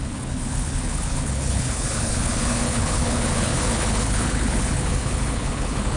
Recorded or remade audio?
remade